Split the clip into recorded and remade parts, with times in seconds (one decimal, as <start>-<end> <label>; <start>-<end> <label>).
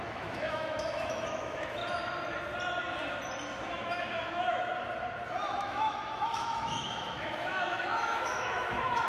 0.0-1.8 remade; 1.8-3.7 recorded; 3.7-4.7 remade; 4.7-5.6 recorded; 5.6-9.1 remade